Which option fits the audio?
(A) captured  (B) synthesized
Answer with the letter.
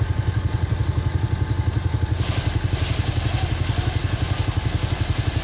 A